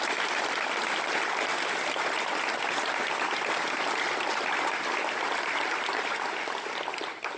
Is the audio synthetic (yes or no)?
no